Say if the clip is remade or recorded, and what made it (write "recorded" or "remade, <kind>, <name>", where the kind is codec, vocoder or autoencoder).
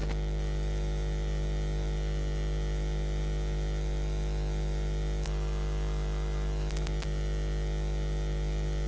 recorded